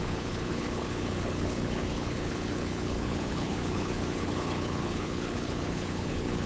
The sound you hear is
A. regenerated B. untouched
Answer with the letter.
A